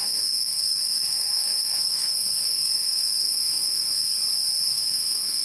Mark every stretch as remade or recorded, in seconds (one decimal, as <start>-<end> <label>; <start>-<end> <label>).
0.0-4.1 remade; 4.1-4.7 recorded; 4.7-5.4 remade